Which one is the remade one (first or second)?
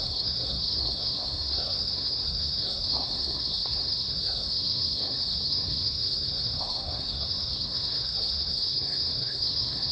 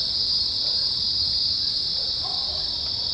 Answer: first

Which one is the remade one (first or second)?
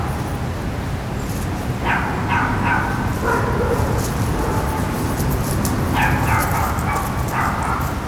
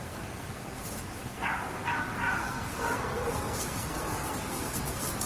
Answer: second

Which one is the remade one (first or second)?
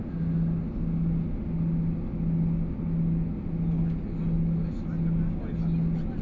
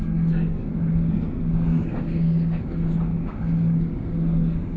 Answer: second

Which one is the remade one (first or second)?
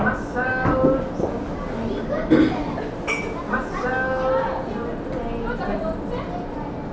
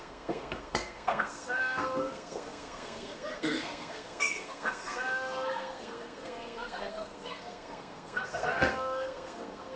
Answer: second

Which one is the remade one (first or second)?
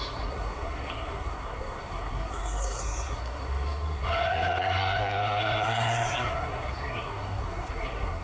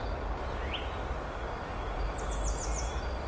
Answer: first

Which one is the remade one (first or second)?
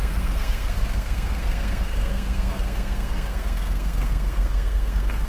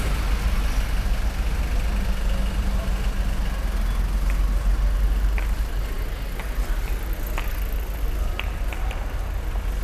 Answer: first